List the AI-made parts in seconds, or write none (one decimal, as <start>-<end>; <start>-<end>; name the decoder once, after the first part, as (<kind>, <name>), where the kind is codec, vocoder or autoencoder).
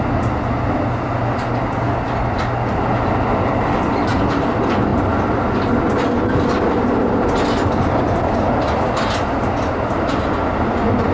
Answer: none